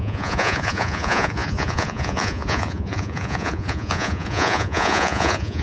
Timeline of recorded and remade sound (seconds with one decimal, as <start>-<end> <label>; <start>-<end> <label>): 0.0-5.6 remade